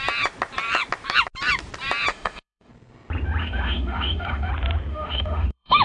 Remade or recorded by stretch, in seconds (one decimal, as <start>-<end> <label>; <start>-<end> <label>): 0.0-2.1 recorded; 2.1-2.7 remade; 2.7-3.4 recorded; 3.4-4.5 remade; 4.5-4.9 recorded; 4.9-5.8 remade